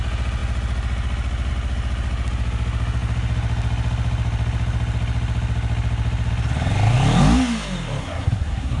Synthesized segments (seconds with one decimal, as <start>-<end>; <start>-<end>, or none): 8.0-8.8